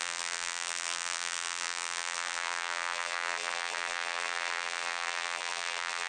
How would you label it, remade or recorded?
remade